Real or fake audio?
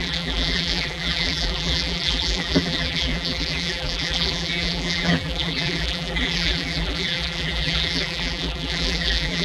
fake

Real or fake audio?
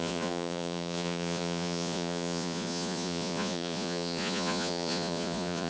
fake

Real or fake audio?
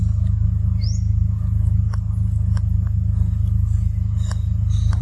real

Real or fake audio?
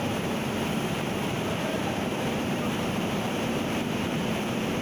fake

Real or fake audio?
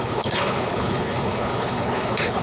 fake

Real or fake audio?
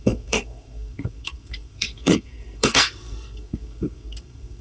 fake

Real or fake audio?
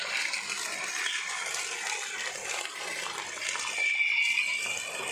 real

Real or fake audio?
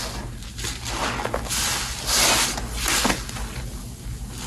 real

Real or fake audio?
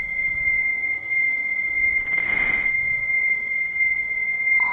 fake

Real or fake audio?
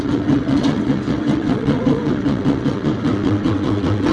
fake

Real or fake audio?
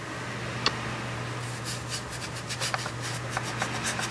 real